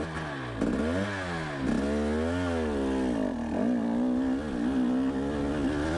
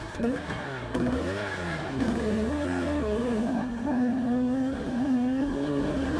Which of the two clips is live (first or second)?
first